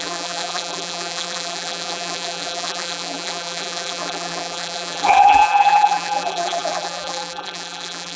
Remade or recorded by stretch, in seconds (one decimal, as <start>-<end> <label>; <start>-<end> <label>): 0.0-8.2 remade